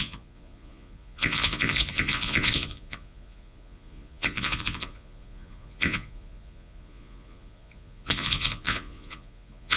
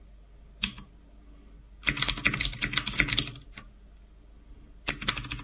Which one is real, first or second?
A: second